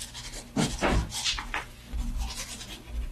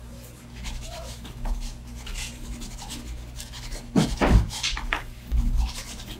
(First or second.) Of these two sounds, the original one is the first